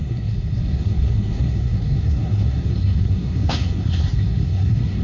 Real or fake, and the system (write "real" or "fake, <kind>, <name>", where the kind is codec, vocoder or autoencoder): fake, codec, SNAC